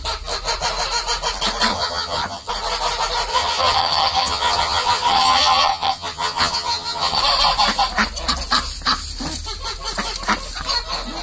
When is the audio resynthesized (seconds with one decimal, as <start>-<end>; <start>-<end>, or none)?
1.7-2.5; 3.3-7.2